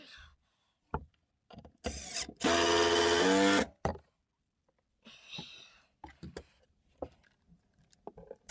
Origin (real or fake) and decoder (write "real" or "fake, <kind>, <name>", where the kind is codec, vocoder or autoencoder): real